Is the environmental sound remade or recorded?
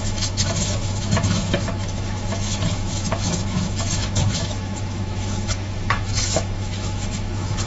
remade